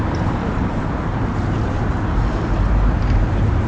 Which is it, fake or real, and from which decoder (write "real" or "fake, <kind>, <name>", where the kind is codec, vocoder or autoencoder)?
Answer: fake, vocoder, BigVGAN v2